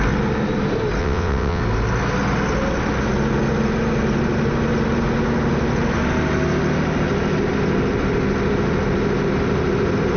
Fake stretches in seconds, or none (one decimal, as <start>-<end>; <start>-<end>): 1.0-1.6